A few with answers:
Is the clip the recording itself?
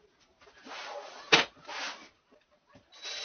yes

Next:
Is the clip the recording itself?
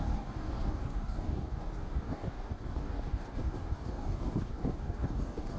no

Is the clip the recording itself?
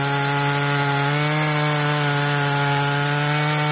yes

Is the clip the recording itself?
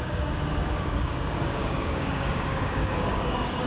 no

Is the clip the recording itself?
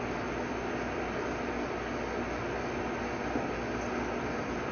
yes